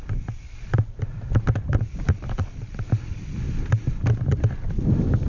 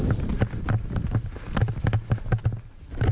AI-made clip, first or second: first